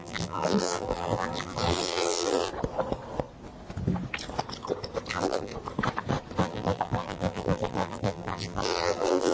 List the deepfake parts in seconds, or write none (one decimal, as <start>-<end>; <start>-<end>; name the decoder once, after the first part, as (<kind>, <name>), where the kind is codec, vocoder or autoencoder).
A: 0.0-2.5 (vocoder, BigVGAN v2); 5.1-5.5; 6.4-9.3